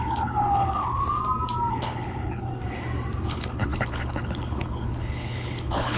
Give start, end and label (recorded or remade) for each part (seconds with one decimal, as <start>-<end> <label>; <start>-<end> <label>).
0.0-1.0 remade; 1.0-1.7 recorded; 1.7-2.5 remade; 2.5-3.3 recorded; 3.3-6.0 remade

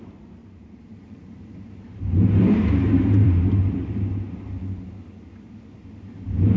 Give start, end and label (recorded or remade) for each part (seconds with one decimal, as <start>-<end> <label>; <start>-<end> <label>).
0.0-0.4 recorded; 0.4-4.4 remade; 4.4-6.6 recorded

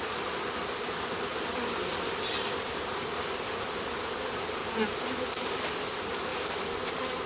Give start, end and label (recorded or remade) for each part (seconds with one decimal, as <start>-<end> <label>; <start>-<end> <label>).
0.0-7.3 recorded